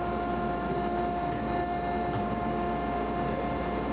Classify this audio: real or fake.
real